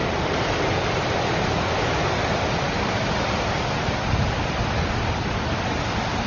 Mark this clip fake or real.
real